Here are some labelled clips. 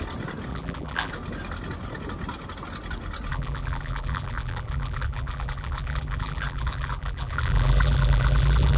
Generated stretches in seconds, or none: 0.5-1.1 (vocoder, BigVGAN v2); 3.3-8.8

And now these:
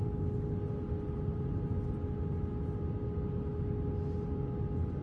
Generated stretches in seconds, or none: none